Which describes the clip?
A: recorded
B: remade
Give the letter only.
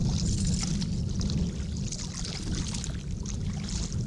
A